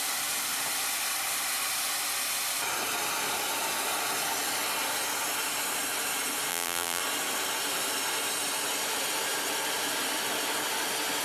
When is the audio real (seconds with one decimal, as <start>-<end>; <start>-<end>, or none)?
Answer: 0.0-6.5; 7.0-11.2